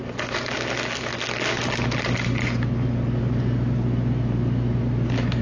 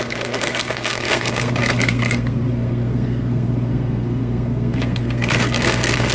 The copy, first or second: second